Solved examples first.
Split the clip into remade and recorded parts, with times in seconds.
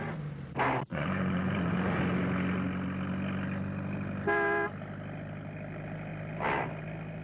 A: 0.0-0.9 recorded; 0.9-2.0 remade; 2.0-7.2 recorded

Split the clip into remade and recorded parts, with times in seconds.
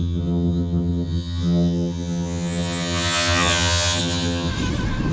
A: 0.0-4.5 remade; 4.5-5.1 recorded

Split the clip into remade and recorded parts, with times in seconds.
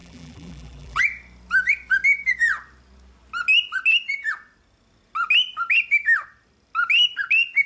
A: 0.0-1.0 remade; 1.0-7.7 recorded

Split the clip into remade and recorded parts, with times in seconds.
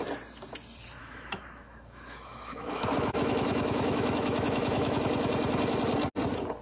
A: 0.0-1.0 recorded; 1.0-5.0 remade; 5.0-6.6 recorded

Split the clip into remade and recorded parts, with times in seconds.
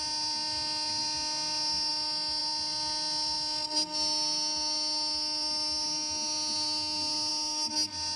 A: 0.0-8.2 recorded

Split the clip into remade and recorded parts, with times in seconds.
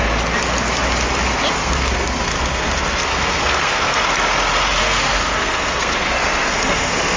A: 0.0-1.5 recorded; 1.5-4.0 remade; 4.0-4.8 recorded; 4.8-7.2 remade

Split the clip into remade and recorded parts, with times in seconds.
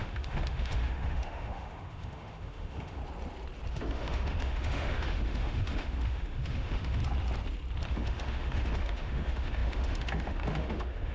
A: 0.0-3.0 remade; 3.0-3.7 recorded; 3.7-7.0 remade; 7.0-7.9 recorded; 7.9-11.1 remade